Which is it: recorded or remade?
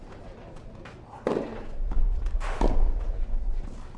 recorded